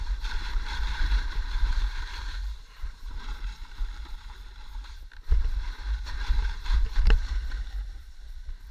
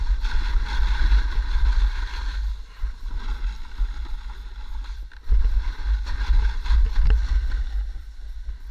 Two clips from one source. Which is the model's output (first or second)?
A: first